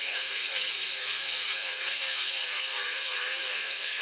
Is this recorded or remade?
remade